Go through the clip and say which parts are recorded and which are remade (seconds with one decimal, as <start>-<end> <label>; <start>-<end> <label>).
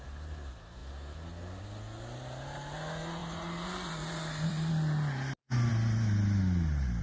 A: 0.0-3.2 recorded; 3.2-4.7 remade; 4.7-7.0 recorded